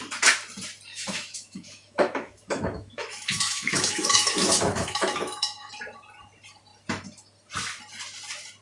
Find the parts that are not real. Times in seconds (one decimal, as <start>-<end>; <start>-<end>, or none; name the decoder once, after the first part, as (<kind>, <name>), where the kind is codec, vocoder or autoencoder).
0.9-5.7 (autoencoder, DAC-VAE)